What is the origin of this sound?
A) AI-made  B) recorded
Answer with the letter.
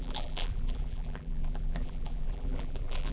A